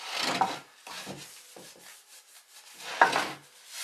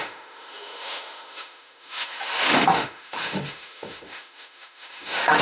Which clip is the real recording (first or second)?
first